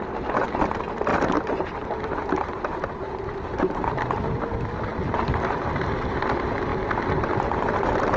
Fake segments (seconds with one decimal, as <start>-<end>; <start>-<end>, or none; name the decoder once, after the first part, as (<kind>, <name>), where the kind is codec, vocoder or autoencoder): 1.1-4.2 (vocoder, BigVGAN v2)